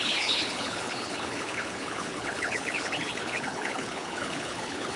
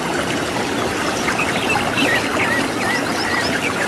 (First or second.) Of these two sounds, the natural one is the second